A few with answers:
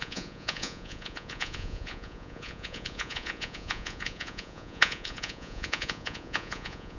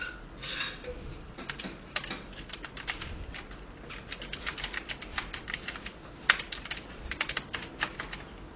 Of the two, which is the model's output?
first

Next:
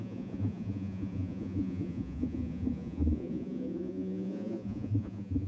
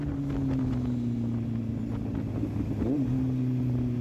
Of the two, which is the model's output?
first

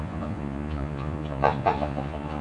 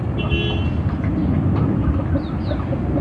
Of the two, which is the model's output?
first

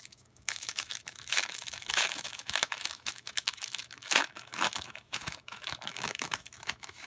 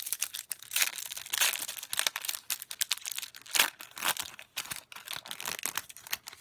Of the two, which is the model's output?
first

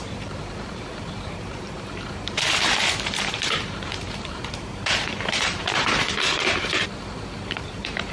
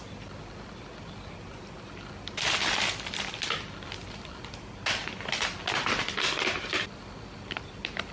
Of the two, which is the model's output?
first